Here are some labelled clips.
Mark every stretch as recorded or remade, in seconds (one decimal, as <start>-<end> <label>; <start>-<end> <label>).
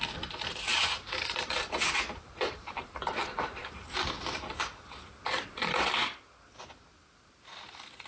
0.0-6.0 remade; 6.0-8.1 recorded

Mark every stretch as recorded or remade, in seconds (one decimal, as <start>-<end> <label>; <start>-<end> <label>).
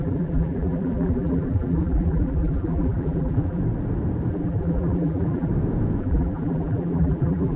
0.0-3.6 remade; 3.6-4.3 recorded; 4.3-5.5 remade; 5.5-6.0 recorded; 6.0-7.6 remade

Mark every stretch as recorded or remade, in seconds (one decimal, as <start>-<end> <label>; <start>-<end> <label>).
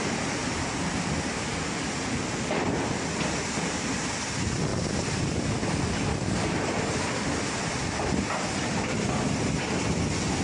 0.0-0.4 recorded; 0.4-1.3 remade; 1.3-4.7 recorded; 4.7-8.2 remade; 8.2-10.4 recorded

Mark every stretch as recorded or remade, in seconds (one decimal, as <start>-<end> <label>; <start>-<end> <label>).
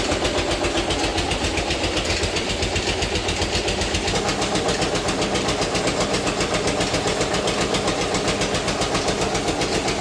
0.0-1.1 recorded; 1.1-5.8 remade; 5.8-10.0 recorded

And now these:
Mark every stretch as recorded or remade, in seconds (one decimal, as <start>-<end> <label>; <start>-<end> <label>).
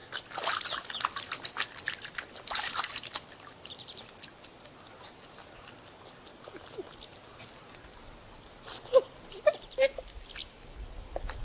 0.0-11.4 recorded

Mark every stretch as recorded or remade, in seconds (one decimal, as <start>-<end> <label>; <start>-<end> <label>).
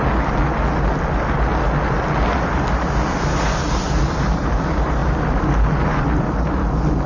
0.0-7.1 recorded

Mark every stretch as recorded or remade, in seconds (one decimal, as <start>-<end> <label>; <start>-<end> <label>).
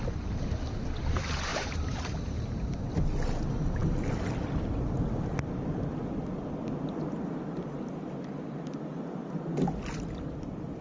0.0-1.5 recorded; 1.5-2.8 remade; 2.8-10.8 recorded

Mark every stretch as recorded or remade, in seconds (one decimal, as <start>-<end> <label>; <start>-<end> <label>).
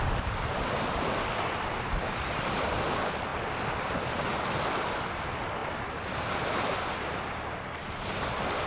0.0-8.7 recorded